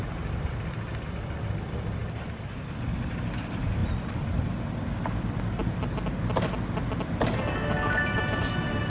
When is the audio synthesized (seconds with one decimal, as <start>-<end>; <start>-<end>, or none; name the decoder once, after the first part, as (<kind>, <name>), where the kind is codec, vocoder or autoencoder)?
none

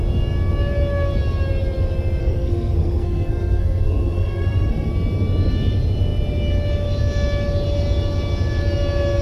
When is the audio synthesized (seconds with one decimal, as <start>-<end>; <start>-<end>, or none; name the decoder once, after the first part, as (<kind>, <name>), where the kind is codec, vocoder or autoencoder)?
2.2-4.9 (codec, SNAC)

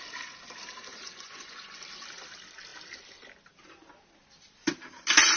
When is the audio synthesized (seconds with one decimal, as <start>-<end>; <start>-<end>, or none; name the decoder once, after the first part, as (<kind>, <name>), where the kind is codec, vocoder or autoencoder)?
0.9-1.8 (vocoder, Vocos)

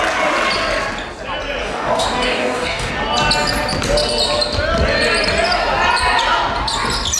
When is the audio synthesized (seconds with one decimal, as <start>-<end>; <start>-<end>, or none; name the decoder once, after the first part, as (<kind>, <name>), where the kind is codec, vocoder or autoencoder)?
1.6-2.9 (codec, DAC)

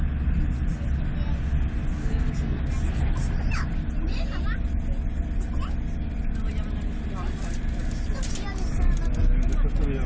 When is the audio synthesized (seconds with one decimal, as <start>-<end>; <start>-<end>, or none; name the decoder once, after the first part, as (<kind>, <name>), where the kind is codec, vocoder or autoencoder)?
2.0-2.6 (codec, SNAC)

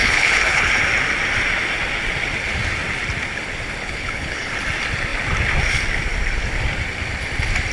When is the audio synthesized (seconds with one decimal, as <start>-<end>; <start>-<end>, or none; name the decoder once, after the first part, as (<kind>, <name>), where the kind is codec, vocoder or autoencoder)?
0.0-0.8 (codec, HILCodec); 3.8-4.5